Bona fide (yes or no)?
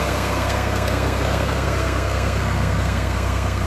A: no